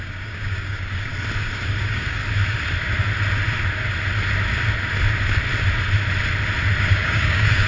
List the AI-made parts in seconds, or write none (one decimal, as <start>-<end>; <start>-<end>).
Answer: 0.0-1.1; 1.7-2.2; 6.8-7.7